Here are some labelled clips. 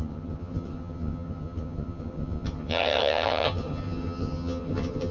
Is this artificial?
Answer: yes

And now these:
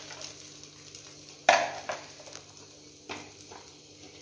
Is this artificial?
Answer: no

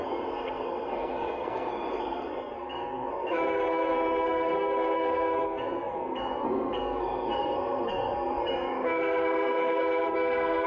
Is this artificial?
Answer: yes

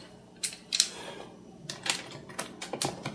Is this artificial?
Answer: no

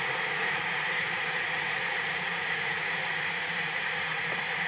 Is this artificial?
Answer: yes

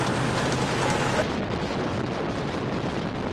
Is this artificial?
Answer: no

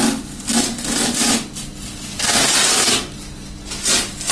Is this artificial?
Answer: no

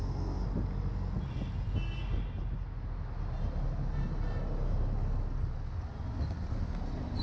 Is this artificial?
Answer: no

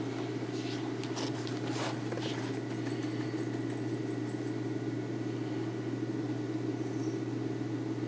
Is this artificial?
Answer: no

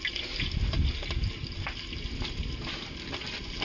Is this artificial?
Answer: no